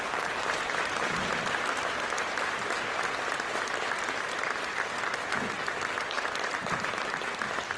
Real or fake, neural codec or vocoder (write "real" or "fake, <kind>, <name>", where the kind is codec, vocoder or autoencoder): real